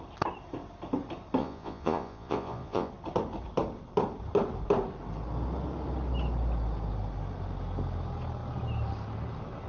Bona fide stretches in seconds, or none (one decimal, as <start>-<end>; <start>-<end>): 0.0-1.4; 2.9-9.7